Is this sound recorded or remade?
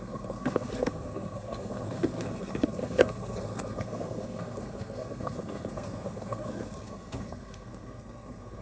remade